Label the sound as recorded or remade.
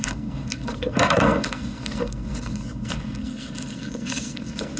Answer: remade